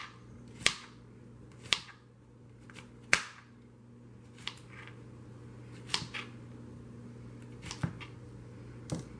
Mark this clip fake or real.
real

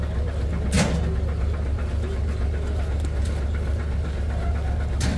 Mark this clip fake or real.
real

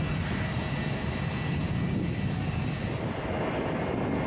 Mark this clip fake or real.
real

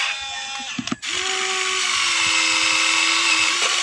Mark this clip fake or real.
real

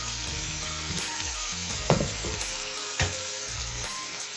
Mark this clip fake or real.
fake